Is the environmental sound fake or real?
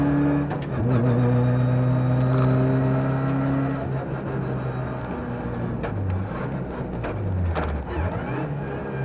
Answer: real